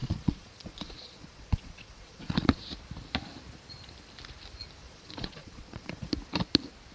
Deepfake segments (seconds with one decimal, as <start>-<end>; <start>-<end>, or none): 0.0-2.6; 4.8-6.1